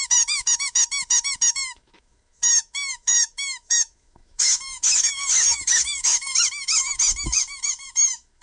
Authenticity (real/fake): fake